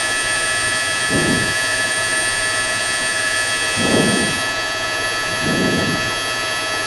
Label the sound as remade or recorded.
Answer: remade